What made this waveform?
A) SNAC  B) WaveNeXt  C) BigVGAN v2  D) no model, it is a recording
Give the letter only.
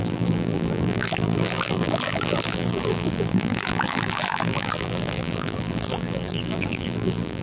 C